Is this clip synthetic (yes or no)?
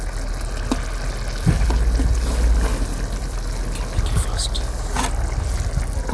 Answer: no